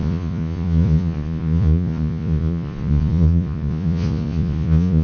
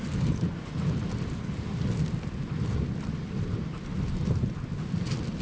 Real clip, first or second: second